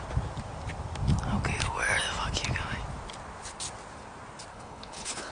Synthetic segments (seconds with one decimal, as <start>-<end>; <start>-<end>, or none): 4.5-5.3

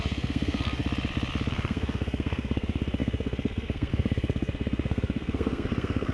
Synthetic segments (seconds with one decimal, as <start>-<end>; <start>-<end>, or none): 0.0-0.8; 1.5-6.1

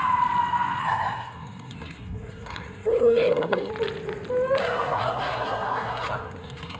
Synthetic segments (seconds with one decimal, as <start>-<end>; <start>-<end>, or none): 0.8-3.7; 4.6-6.8

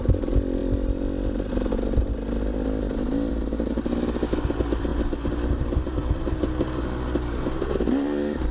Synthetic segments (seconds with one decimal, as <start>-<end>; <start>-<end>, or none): none

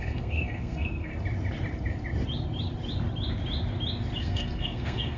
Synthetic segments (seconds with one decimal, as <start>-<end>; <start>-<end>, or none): 0.0-1.1; 4.2-5.2